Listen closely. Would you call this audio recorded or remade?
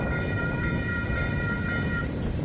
remade